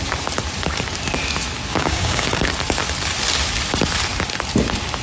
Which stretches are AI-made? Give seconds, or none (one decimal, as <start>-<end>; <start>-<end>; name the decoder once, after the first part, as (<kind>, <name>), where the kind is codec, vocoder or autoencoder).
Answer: 1.7-2.4 (codec, DAC)